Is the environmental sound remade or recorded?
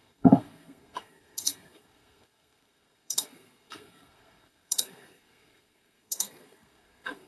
remade